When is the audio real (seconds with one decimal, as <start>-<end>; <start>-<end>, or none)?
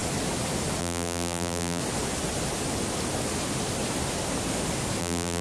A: 0.0-0.8; 1.8-5.0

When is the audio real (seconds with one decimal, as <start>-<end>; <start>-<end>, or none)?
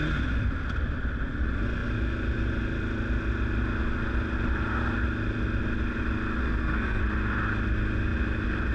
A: 0.0-6.4; 7.0-8.7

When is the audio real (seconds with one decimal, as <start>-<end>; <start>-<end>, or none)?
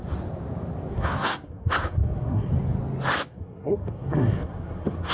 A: 0.0-0.9; 2.5-3.3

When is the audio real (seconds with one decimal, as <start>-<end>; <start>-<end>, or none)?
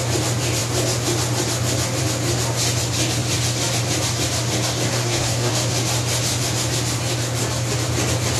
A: 0.0-4.9; 5.5-8.4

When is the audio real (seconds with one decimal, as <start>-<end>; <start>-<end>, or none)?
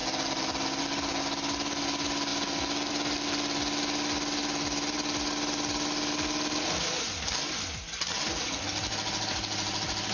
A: 0.0-10.1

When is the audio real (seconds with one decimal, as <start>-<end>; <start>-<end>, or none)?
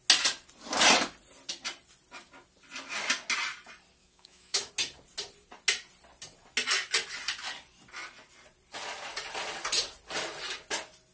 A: 0.0-4.0; 4.7-11.1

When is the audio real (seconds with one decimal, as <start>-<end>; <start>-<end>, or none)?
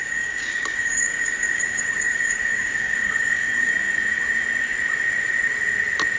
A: 3.7-6.2